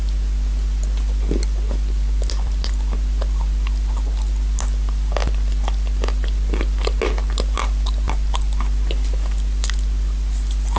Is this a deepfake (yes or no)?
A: no